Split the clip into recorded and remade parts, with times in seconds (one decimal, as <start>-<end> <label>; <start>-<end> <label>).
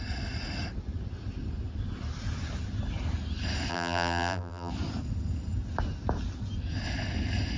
0.0-3.7 recorded; 3.7-4.7 remade; 4.7-7.6 recorded